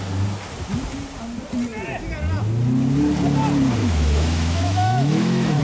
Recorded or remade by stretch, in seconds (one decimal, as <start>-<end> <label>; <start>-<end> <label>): 0.0-3.8 recorded; 3.8-5.6 remade